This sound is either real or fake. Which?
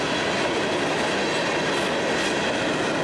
real